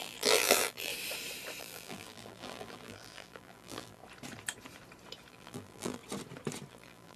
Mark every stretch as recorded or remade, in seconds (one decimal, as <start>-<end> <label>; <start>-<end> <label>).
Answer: 0.0-0.9 remade; 0.9-1.6 recorded; 1.6-4.0 remade; 4.0-5.3 recorded; 5.3-6.0 remade; 6.0-6.7 recorded; 6.7-7.2 remade